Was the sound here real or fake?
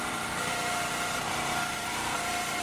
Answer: fake